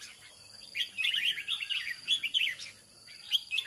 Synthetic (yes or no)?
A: yes